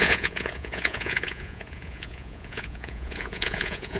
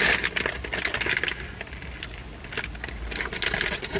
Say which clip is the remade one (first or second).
first